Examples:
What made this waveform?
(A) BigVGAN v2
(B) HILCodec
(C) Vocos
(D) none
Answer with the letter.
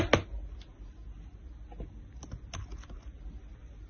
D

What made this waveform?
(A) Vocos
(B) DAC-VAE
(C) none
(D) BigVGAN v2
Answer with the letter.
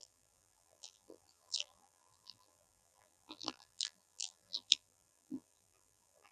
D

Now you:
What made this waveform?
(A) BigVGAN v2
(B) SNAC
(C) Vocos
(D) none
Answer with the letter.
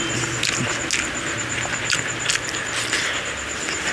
D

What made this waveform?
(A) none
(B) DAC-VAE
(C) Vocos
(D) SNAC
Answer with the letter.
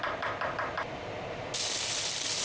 A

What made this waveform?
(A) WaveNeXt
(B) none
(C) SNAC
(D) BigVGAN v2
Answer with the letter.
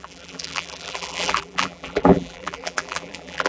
D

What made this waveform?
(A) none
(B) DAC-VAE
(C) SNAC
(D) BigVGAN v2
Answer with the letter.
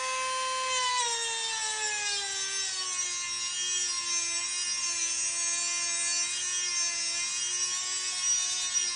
A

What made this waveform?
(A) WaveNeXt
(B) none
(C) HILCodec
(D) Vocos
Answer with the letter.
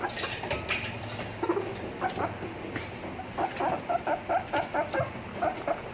B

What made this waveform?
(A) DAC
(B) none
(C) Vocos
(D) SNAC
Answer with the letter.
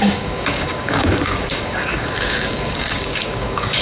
A